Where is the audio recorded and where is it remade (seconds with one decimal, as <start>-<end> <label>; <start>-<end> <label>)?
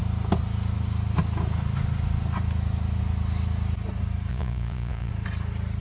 0.0-4.3 recorded; 4.3-5.1 remade; 5.1-5.8 recorded